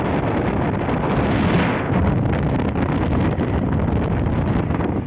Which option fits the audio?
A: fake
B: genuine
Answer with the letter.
B